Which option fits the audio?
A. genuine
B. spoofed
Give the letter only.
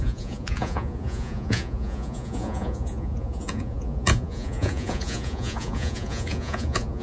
B